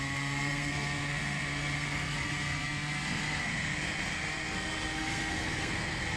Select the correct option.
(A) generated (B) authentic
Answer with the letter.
A